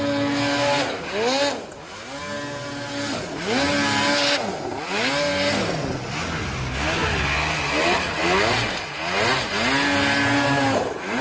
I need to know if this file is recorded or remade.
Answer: recorded